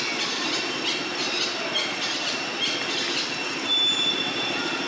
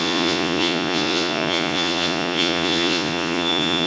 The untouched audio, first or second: first